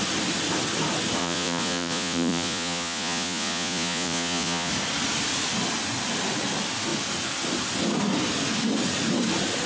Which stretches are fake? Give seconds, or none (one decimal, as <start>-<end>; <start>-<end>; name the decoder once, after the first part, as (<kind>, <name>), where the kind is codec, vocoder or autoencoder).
1.2-4.7 (vocoder, Vocos)